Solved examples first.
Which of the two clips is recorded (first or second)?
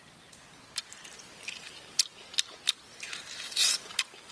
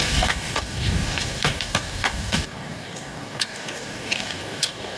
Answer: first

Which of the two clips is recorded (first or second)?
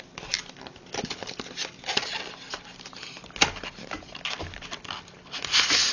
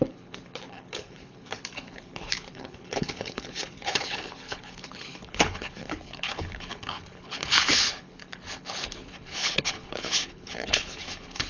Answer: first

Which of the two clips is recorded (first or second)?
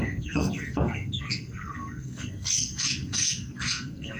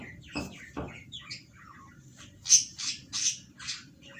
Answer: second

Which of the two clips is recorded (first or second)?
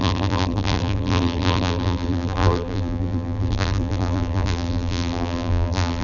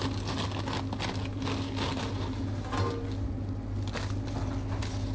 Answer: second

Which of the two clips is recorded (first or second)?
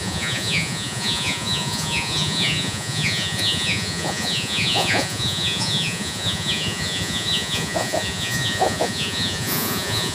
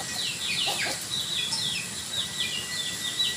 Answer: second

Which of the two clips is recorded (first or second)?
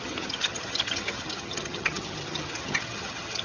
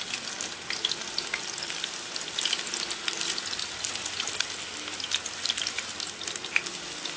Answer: second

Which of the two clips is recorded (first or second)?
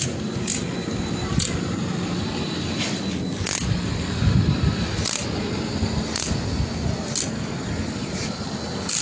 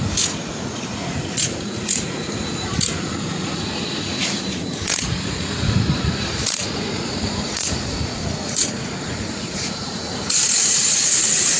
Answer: first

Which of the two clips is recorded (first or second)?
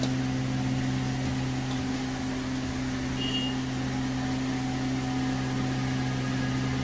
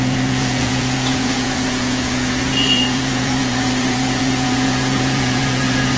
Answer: first